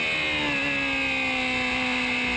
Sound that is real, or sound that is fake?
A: real